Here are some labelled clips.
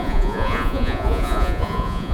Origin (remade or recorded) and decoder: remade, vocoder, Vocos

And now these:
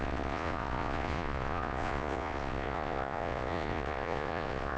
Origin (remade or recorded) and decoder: remade, vocoder, Vocos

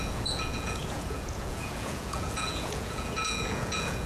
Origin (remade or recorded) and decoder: remade, vocoder, Vocos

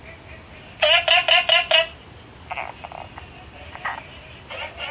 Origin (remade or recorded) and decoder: recorded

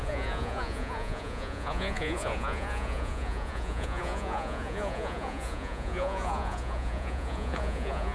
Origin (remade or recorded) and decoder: remade, vocoder, Vocos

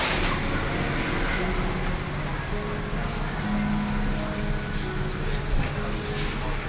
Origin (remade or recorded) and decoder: recorded